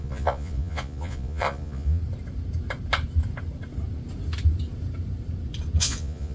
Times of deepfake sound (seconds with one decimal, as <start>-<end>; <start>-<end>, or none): 0.0-2.0; 5.8-6.3